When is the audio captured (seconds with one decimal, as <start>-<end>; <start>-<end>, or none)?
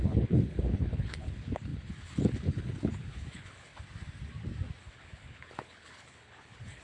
3.7-4.8